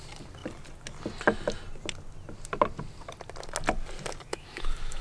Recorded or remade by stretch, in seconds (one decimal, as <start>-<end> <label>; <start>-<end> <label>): 0.0-4.3 recorded; 4.3-5.0 remade